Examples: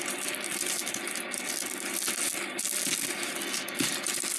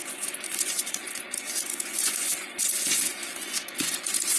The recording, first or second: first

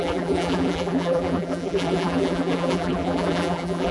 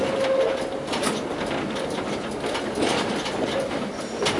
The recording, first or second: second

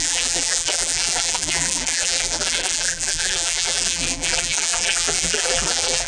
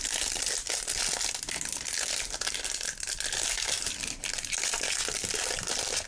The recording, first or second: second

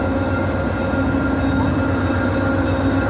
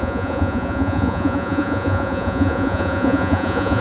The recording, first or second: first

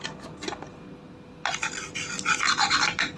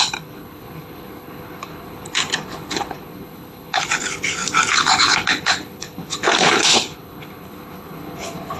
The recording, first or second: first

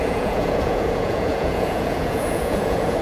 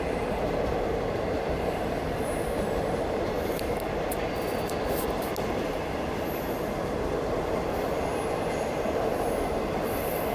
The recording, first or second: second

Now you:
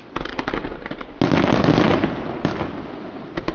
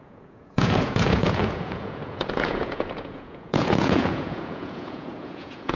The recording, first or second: first